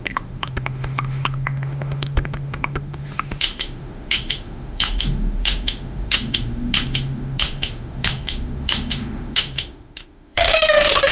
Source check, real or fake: fake